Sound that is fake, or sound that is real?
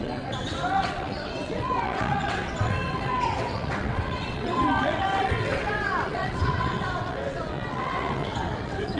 fake